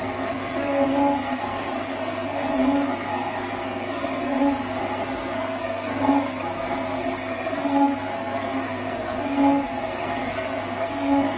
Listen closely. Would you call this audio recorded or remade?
remade